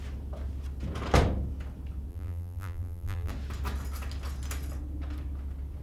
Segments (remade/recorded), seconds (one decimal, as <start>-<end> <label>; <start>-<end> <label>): 0.0-2.1 recorded; 2.1-3.3 remade; 3.3-5.8 recorded